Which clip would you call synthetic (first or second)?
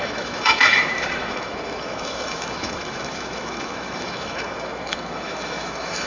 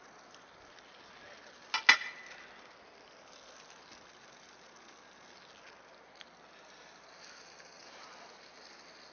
first